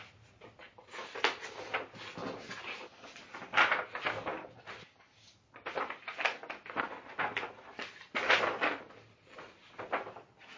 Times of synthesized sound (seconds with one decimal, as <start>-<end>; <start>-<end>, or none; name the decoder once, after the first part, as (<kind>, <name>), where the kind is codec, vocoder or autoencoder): none